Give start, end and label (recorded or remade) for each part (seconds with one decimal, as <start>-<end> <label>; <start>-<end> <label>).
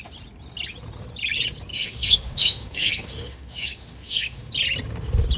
0.0-1.7 recorded; 1.7-4.5 remade; 4.5-5.4 recorded